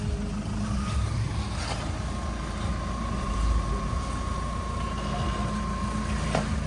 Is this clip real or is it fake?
real